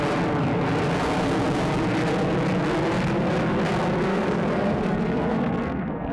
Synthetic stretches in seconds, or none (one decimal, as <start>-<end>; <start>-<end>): 4.1-6.1